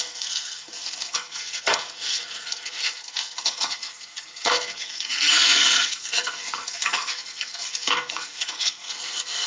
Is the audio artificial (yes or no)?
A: yes